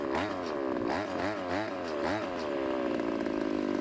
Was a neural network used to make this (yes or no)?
no